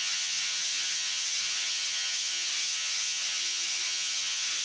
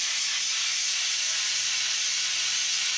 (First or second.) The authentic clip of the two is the second